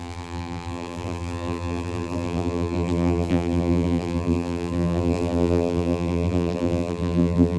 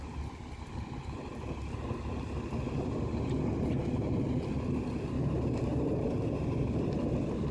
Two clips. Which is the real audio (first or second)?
second